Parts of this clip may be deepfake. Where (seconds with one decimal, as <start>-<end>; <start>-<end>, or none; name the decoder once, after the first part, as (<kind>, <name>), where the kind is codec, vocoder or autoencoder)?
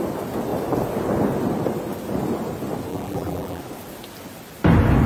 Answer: 2.9-3.6 (vocoder, BigVGAN v2)